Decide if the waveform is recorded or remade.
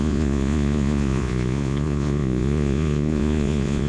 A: remade